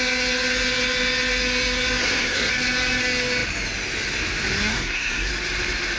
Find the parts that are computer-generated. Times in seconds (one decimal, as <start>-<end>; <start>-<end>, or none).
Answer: 2.0-2.5; 4.7-5.3